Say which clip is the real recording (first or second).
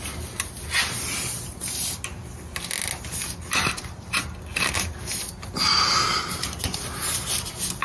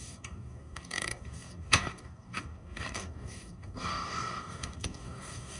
first